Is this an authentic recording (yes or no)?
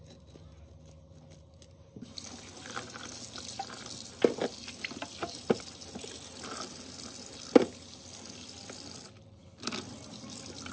yes